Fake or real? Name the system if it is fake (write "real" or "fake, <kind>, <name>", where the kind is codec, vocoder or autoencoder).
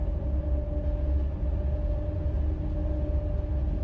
real